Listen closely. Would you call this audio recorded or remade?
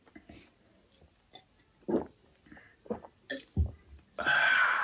recorded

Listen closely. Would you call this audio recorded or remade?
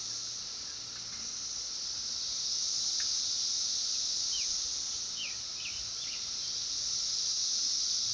recorded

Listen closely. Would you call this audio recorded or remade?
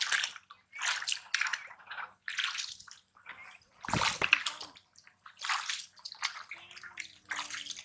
recorded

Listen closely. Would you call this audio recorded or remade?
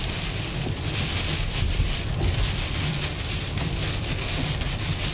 recorded